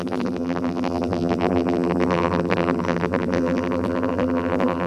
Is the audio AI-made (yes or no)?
yes